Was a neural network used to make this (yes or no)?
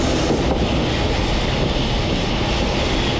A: no